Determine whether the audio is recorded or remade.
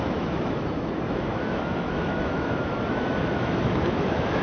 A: remade